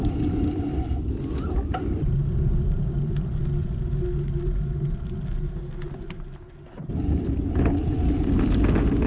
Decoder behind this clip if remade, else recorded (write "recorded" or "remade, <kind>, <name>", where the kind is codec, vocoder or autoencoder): recorded